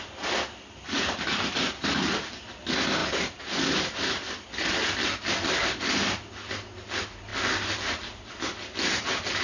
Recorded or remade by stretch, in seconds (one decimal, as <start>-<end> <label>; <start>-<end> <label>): 0.0-9.4 recorded